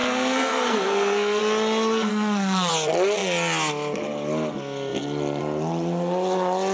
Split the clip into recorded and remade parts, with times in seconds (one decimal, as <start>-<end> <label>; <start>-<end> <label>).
0.0-1.4 remade; 1.4-2.1 recorded; 2.1-2.7 remade; 2.7-6.7 recorded